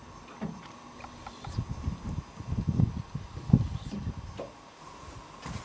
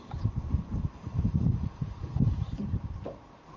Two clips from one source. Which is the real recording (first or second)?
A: first